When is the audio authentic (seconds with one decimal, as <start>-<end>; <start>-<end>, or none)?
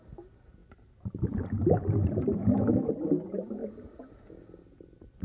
0.0-2.4; 2.9-5.2